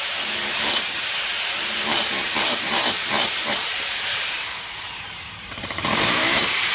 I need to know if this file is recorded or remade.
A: remade